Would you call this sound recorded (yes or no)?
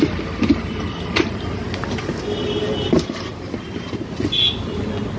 yes